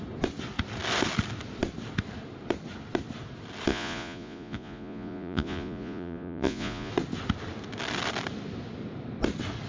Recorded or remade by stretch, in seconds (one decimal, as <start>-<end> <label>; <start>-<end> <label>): 0.0-3.7 recorded; 3.7-6.9 remade; 6.9-9.7 recorded